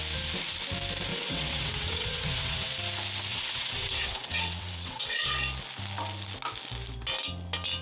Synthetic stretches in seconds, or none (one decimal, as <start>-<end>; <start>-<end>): 1.1-2.7; 3.3-5.3

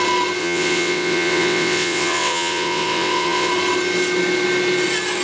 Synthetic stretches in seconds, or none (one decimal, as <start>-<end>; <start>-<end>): 0.4-3.5

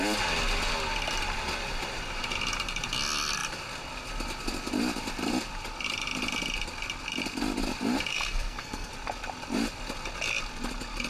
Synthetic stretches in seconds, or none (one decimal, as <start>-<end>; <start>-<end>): 8.1-8.9

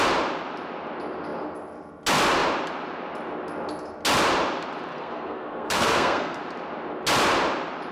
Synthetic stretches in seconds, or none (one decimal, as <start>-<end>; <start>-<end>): 4.9-6.4

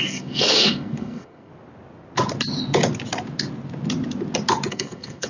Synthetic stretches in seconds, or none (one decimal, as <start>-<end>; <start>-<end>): 0.0-1.5; 4.7-5.3

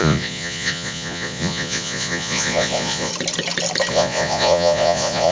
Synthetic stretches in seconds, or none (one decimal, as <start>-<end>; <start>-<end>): 0.0-3.1; 3.9-5.3

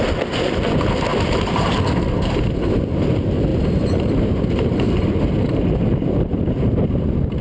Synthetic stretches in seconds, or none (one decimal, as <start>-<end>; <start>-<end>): 1.1-1.8; 3.5-6.9